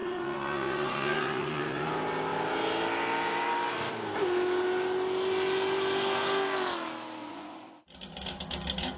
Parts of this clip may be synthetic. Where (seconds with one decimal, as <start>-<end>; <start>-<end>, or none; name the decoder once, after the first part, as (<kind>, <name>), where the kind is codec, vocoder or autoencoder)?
0.0-1.9 (vocoder, Vocos); 7.2-7.8

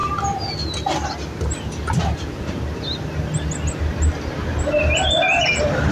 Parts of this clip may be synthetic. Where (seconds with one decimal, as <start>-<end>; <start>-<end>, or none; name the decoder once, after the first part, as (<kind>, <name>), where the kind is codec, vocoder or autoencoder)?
none

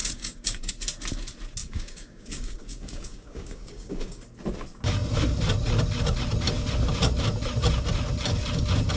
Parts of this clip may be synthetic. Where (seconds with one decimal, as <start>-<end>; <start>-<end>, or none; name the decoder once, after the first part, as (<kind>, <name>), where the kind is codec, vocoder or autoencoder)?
0.0-0.7 (codec, DAC); 1.6-4.2